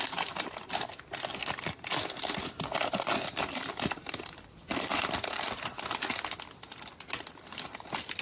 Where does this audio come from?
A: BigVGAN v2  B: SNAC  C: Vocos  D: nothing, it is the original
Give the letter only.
A